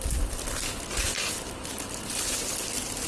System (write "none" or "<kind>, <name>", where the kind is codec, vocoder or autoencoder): none